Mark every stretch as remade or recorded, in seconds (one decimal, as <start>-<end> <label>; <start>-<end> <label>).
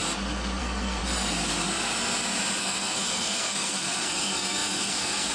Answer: 0.0-0.6 recorded; 0.6-1.0 remade; 1.0-2.6 recorded; 2.6-5.3 remade